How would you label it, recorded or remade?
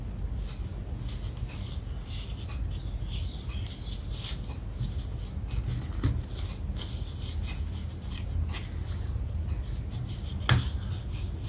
recorded